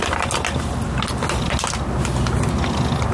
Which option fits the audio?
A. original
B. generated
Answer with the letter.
A